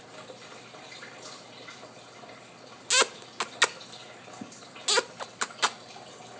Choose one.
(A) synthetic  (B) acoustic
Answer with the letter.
B